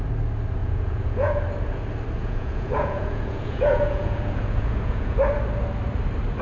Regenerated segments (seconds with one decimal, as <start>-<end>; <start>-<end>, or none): 0.6-1.4; 2.2-5.2

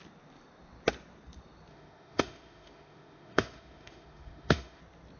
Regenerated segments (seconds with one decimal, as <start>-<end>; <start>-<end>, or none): 1.7-4.8